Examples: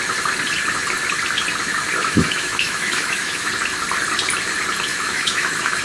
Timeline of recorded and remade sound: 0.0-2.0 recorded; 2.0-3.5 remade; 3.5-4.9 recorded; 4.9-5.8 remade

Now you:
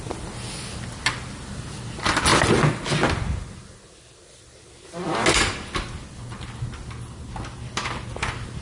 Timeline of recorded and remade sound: 0.0-8.6 recorded

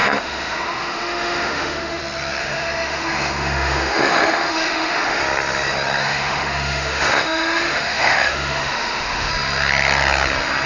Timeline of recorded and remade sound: 0.0-2.0 remade; 2.0-2.4 recorded; 2.4-5.2 remade; 5.2-6.0 recorded; 6.0-9.3 remade; 9.3-10.7 recorded

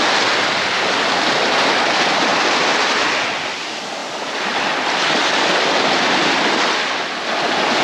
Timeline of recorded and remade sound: 0.0-7.8 recorded

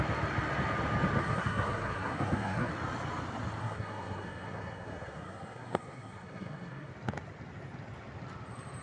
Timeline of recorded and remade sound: 0.0-1.2 recorded; 1.2-2.7 remade; 2.7-3.6 recorded; 3.6-6.9 remade; 6.9-8.8 recorded

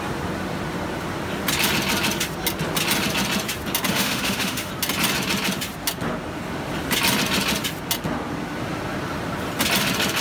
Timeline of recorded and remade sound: 0.0-3.9 recorded; 3.9-4.7 remade; 4.7-10.2 recorded

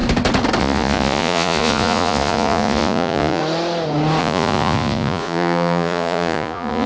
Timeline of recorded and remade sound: 0.0-0.6 recorded; 0.6-3.4 remade; 3.4-4.2 recorded; 4.2-6.9 remade

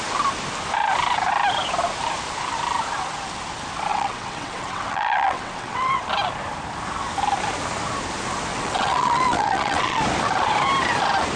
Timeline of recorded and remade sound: 0.0-3.9 recorded; 3.9-6.1 remade; 6.1-8.5 recorded; 8.5-10.0 remade; 10.0-11.4 recorded